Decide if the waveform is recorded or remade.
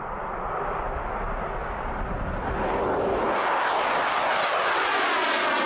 recorded